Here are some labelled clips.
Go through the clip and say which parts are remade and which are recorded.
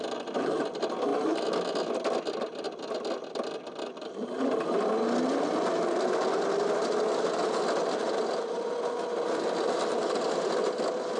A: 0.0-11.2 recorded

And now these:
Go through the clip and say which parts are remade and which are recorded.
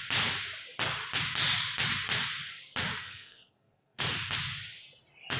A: 0.0-3.0 recorded; 3.0-4.0 remade; 4.0-5.4 recorded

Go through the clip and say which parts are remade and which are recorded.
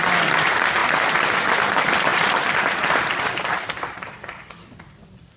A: 0.0-5.4 recorded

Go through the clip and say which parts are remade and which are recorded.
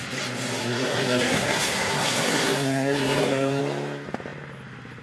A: 0.0-0.6 recorded; 0.6-3.6 remade; 3.6-5.0 recorded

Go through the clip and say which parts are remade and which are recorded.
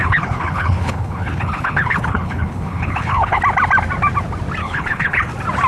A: 0.0-3.4 remade; 3.4-4.6 recorded; 4.6-5.3 remade; 5.3-5.7 recorded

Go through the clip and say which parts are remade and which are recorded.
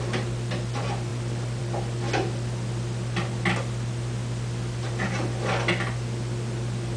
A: 0.0-7.0 recorded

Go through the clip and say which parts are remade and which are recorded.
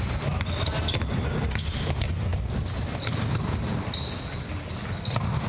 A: 0.0-5.5 recorded